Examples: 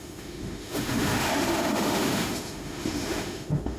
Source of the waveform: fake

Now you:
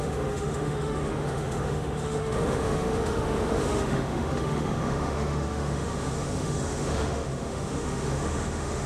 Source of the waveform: fake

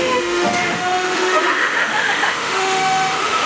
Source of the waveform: fake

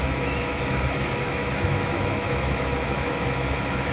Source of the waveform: fake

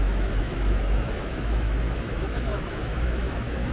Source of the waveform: fake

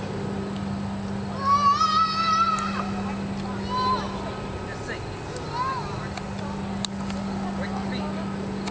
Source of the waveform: real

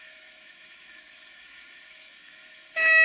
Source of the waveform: fake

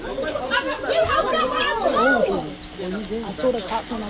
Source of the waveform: real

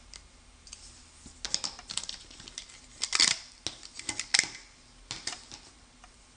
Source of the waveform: real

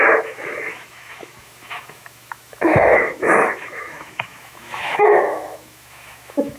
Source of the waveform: fake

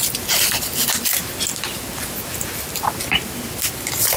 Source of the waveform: real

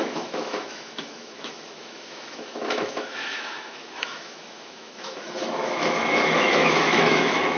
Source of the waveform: fake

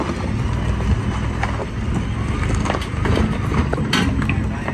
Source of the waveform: real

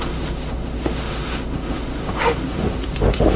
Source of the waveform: fake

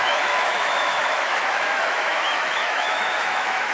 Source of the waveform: fake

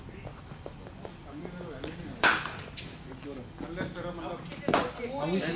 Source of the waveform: real